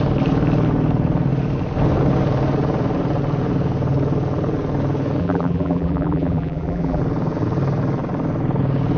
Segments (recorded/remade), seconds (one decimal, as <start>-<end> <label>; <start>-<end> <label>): 0.0-5.2 recorded; 5.2-7.0 remade; 7.0-9.0 recorded